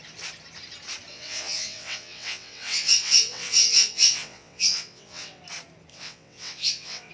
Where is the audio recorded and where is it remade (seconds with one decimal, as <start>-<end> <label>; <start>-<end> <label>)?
0.0-1.1 recorded; 1.1-5.4 remade; 5.4-5.9 recorded; 5.9-7.1 remade